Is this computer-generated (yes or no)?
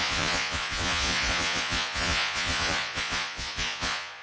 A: yes